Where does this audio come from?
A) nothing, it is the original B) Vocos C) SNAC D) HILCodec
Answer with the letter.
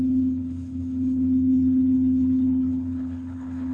D